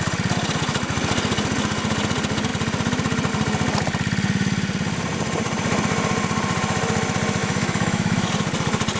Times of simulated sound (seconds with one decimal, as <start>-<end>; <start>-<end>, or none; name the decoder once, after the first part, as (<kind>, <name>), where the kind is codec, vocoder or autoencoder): 7.4-8.3 (autoencoder, DAC-VAE)